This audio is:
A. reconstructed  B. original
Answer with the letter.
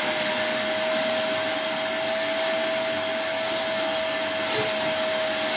B